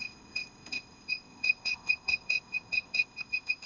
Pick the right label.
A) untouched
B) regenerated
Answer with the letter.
B